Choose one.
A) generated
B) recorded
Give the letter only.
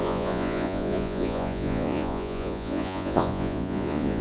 A